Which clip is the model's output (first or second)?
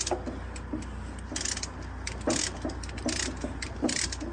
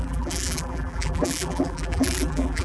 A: second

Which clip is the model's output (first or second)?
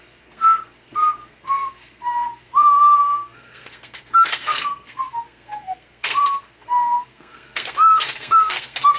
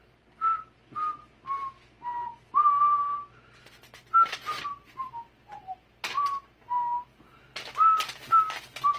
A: first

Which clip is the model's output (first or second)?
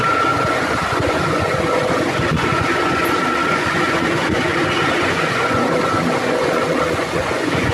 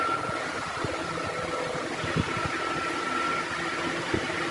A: first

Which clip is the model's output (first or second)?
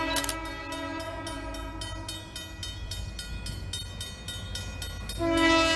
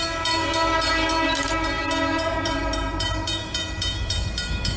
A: second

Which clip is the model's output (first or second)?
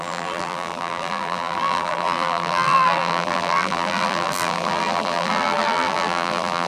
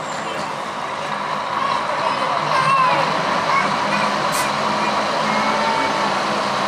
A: first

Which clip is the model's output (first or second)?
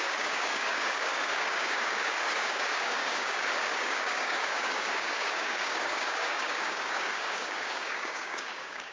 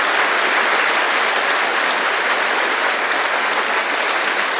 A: first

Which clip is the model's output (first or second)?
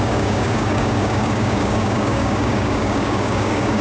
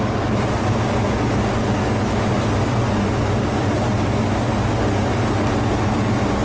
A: first